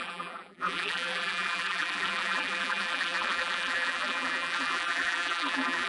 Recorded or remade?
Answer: remade